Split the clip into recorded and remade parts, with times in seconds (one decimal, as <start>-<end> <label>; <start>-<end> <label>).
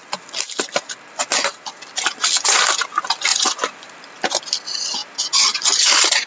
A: 0.0-3.3 recorded; 3.3-3.9 remade; 3.9-6.3 recorded